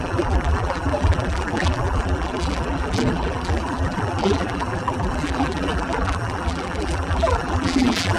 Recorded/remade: remade